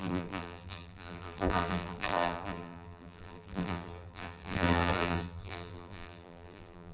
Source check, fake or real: fake